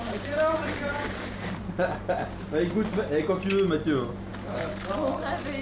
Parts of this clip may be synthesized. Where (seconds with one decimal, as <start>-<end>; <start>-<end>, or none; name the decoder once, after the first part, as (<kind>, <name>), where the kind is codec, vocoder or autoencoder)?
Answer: 0.6-2.0 (vocoder, BigVGAN v2)